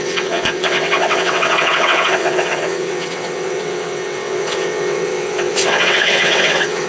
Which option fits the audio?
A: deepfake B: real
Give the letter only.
A